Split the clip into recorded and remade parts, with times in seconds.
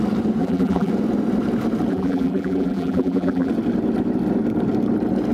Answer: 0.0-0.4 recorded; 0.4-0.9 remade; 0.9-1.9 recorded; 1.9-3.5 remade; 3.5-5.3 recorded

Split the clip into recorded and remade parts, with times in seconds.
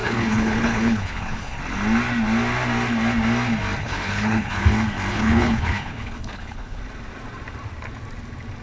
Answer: 0.0-1.6 remade; 1.6-3.8 recorded; 3.8-4.6 remade; 4.6-5.1 recorded; 5.1-6.8 remade; 6.8-8.6 recorded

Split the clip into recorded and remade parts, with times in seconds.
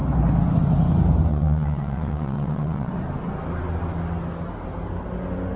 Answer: 0.0-1.3 recorded; 1.3-2.9 remade; 2.9-5.6 recorded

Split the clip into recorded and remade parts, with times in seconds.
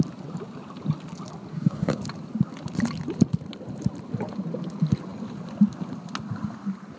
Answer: 0.0-1.5 recorded; 1.5-2.0 remade; 2.0-7.0 recorded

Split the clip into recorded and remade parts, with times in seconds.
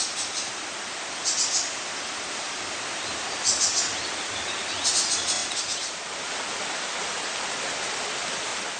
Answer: 0.0-8.8 recorded